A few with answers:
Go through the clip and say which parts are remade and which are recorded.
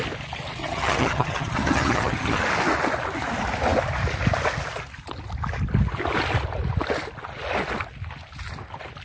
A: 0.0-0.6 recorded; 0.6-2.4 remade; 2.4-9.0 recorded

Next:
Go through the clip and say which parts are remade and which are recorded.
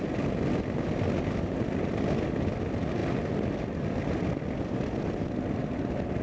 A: 0.0-6.2 recorded